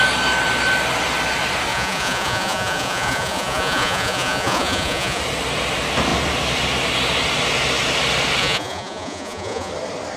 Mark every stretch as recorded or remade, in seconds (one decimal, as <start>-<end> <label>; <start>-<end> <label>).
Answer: 0.0-1.7 recorded; 1.7-5.2 remade; 5.2-8.4 recorded; 8.4-9.7 remade; 9.7-10.2 recorded